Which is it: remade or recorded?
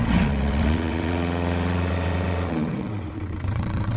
remade